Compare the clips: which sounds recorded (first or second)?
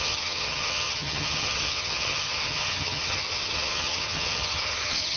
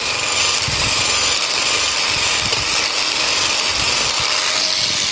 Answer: second